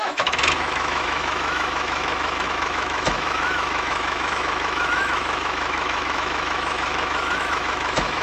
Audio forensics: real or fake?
fake